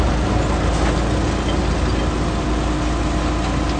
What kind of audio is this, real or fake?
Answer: real